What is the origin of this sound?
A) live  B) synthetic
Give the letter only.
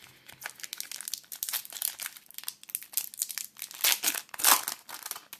A